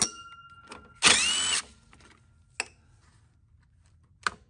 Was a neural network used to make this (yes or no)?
no